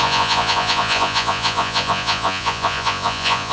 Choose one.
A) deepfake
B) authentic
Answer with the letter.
A